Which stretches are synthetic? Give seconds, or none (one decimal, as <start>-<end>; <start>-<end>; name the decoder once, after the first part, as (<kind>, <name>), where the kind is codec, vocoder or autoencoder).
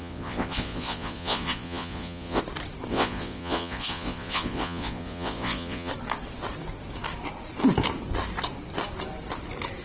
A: 0.0-2.4 (vocoder, Vocos); 2.9-5.9